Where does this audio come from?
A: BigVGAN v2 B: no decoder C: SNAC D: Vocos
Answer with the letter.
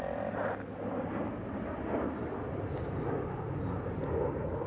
B